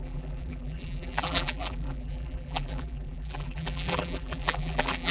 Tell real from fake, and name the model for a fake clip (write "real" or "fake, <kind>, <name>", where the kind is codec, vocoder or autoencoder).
fake, vocoder, BigVGAN v2